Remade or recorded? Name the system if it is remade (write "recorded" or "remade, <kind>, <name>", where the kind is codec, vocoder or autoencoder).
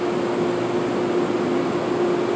recorded